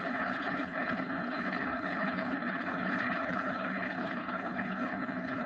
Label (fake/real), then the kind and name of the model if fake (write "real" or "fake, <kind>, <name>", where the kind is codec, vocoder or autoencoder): fake, codec, HILCodec